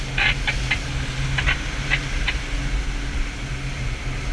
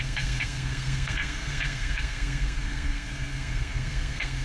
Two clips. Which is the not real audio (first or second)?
second